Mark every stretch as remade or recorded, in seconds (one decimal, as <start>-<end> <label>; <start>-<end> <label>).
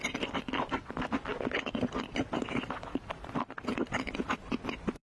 0.0-5.1 recorded